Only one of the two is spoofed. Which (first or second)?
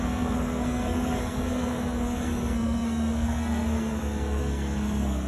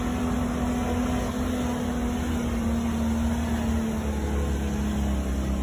first